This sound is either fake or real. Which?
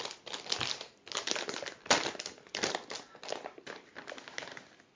real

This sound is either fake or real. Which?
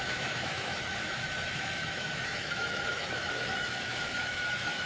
fake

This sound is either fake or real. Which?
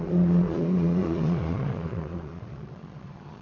fake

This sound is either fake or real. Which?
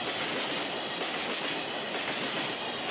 real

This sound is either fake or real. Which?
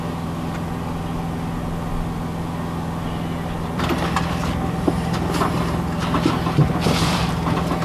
real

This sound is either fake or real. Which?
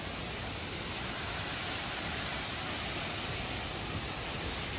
real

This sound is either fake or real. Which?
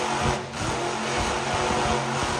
real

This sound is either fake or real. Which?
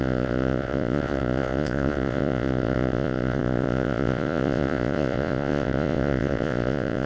fake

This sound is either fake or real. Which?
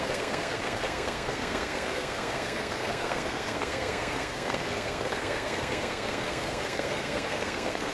fake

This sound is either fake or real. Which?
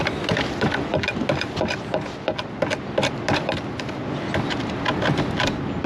real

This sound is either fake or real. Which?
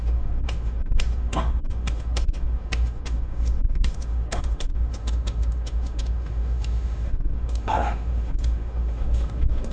fake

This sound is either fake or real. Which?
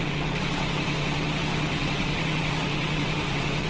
fake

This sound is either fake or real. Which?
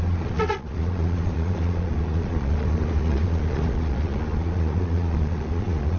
fake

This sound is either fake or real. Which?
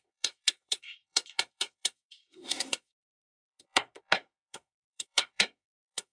fake